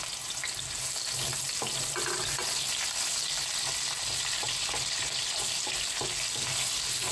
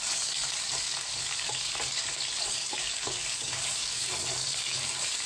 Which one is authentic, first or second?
first